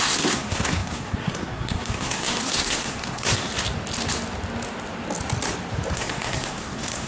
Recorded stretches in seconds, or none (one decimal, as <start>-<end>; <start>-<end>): 3.5-5.9